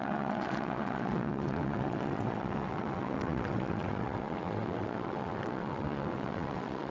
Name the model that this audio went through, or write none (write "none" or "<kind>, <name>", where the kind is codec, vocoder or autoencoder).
vocoder, WaveNeXt